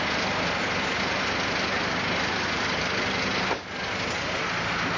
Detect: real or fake real